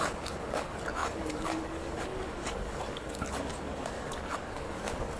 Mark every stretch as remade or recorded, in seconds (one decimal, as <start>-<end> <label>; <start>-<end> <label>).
0.0-5.2 remade